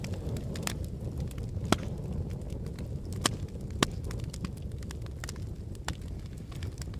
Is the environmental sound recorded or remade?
recorded